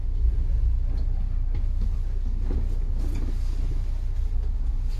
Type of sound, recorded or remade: recorded